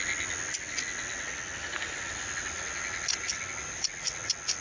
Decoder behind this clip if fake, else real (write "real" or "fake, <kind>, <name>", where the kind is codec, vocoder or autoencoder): real